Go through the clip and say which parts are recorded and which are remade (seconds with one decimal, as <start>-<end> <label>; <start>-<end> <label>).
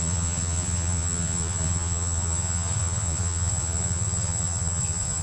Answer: 0.0-5.2 remade